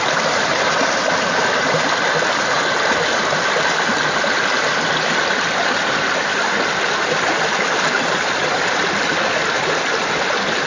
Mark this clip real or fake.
real